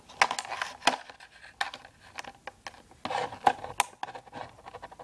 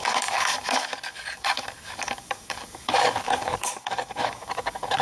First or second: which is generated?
second